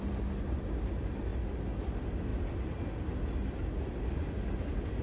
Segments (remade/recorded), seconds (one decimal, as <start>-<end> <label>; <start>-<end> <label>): 0.0-5.0 recorded